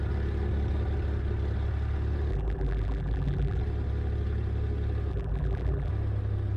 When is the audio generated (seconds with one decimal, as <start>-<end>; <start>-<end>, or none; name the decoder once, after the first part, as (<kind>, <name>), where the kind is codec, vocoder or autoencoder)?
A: 2.3-3.6 (vocoder, BigVGAN v2); 5.1-5.9